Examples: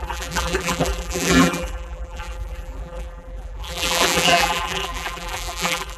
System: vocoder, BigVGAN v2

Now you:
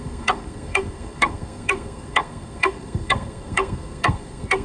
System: codec, SNAC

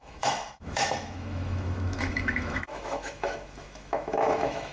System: autoencoder, DAC-VAE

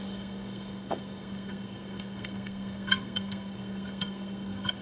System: codec, SNAC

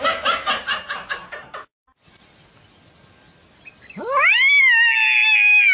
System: none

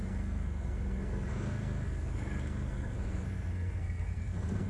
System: codec, SNAC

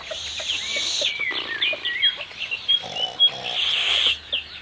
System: none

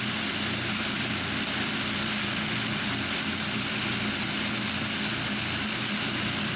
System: none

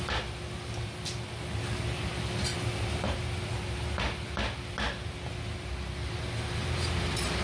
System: none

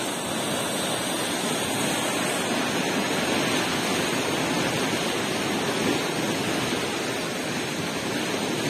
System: none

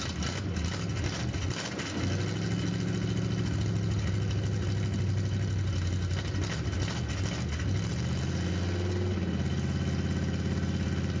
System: none